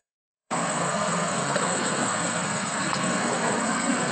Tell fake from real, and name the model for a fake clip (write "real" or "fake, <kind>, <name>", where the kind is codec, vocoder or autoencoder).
fake, codec, SNAC